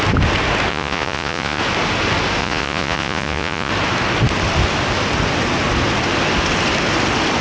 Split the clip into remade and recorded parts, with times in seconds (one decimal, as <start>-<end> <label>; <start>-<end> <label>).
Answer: 0.0-0.7 recorded; 0.7-1.6 remade; 1.6-2.4 recorded; 2.4-3.7 remade; 3.7-7.4 recorded